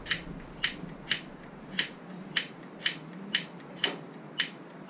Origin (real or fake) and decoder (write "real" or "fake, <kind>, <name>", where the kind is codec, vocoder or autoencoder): fake, vocoder, BigVGAN v2